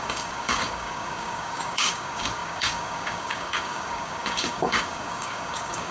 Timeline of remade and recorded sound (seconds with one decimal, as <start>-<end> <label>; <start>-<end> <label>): 0.0-5.9 remade